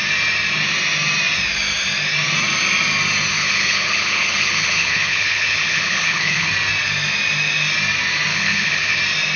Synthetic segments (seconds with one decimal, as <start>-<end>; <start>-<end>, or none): 3.3-6.5; 8.3-9.0